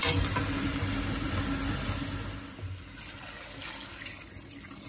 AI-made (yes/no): no